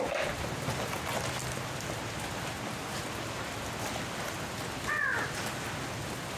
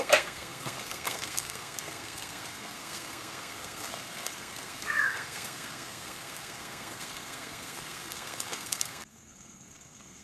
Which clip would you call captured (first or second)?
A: first